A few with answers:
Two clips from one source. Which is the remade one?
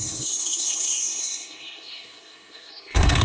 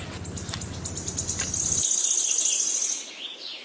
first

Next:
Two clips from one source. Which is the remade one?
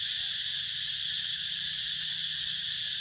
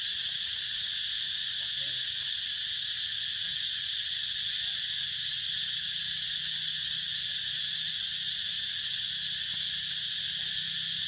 first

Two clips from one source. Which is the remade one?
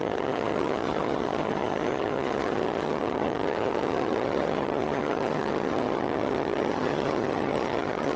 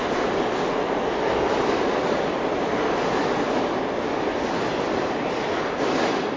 first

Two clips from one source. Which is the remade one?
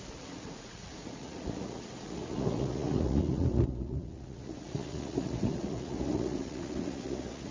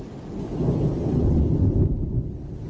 first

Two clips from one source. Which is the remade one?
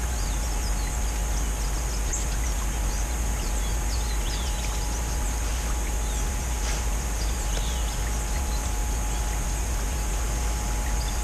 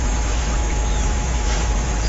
second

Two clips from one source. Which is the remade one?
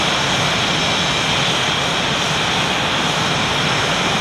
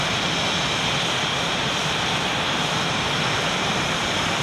second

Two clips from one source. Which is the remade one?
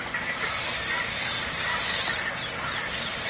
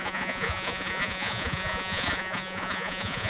second